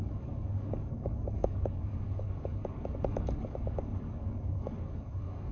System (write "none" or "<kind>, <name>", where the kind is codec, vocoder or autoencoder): codec, DAC